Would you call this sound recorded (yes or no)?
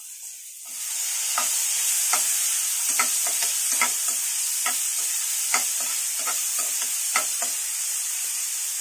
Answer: yes